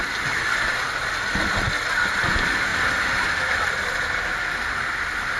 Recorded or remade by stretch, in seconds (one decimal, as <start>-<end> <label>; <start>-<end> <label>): 0.0-5.4 recorded